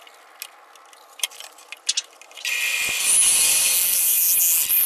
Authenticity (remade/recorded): recorded